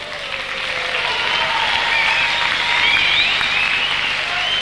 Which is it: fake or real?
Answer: real